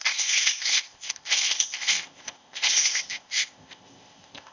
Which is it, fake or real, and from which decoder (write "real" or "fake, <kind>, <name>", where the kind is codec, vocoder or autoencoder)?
fake, codec, ZipCodec